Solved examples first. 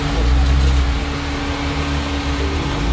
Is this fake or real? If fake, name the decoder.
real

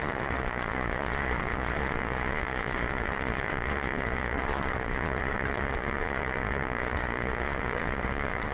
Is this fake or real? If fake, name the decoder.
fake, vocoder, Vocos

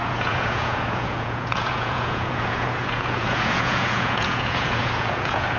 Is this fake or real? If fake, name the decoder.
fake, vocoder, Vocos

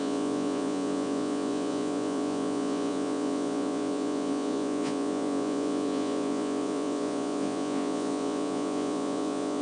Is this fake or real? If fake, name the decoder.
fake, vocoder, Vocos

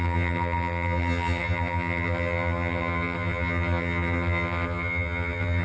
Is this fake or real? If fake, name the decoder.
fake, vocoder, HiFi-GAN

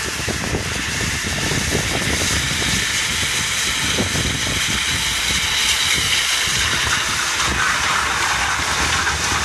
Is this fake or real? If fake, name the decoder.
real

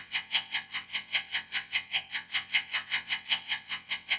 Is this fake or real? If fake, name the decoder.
fake, vocoder, WaveNeXt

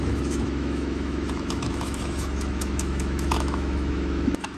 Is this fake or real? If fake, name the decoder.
fake, autoencoder, DAC-VAE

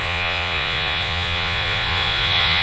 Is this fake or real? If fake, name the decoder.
fake, vocoder, Vocos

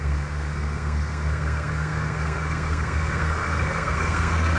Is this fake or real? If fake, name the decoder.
fake, codec, SNAC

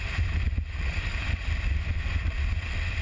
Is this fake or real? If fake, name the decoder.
real